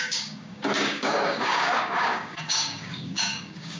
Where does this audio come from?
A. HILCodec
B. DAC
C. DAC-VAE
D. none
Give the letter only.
B